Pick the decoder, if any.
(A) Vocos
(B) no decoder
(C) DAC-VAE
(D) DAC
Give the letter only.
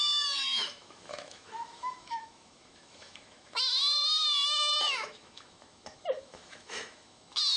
C